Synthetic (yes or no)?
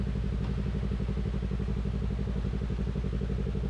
no